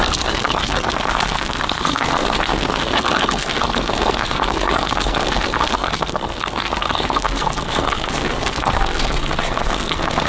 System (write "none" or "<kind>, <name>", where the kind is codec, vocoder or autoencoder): codec, SNAC